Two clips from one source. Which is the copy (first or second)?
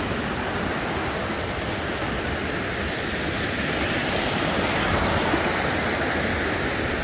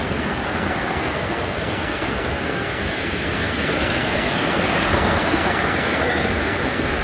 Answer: second